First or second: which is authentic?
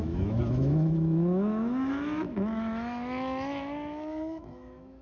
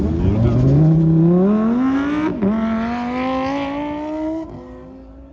second